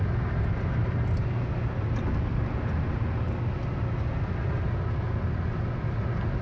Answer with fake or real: real